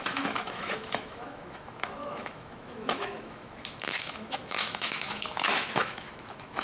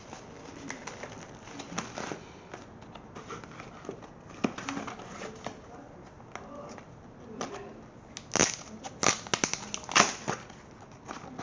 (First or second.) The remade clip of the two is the first